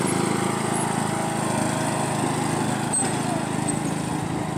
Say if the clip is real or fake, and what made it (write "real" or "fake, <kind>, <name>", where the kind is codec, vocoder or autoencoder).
real